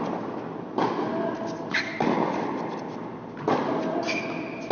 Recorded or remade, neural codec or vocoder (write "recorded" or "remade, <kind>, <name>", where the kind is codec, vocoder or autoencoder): recorded